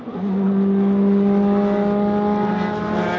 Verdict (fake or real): real